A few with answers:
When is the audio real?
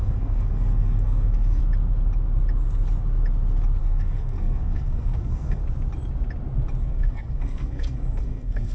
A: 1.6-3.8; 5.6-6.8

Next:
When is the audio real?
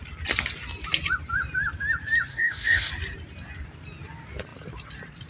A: 0.0-2.3; 2.9-5.3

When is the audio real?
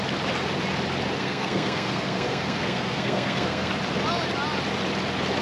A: 0.0-1.2; 3.7-5.4